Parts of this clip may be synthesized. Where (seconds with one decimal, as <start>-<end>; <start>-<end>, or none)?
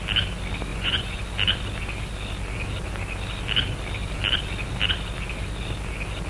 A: 0.7-1.2